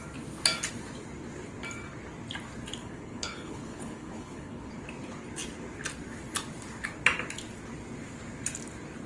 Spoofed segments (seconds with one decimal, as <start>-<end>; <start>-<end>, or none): 2.8-4.7